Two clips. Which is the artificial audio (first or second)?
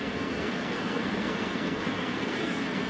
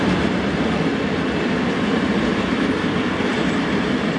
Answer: first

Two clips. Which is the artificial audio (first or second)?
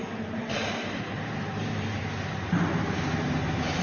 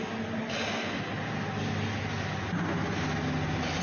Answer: first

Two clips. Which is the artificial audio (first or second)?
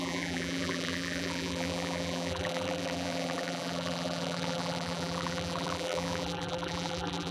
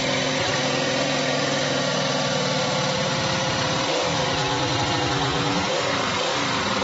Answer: first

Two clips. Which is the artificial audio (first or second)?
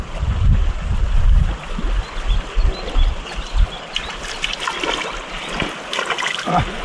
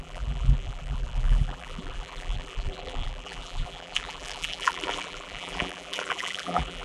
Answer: second